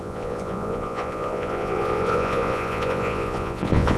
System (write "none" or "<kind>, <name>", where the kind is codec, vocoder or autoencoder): vocoder, Vocos